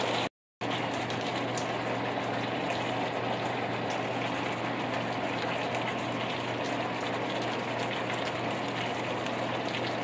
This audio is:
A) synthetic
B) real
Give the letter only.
B